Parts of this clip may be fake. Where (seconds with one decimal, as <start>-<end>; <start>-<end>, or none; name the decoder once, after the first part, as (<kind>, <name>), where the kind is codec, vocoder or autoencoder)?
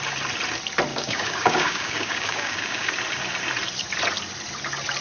0.9-2.9 (codec, DAC)